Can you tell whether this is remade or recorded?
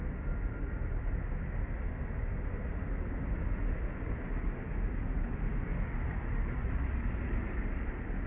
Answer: recorded